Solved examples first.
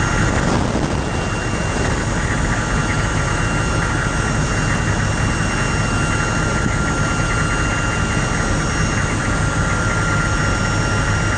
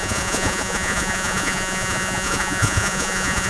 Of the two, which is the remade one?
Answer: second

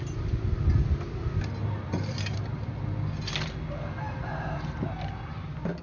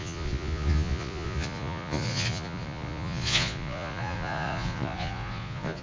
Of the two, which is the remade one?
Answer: second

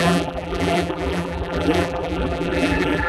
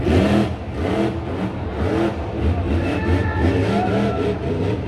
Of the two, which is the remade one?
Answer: first